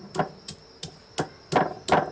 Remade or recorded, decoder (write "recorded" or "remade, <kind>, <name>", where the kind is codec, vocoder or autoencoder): recorded